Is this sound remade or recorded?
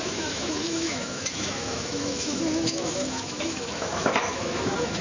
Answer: remade